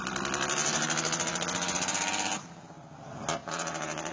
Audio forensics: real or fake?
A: real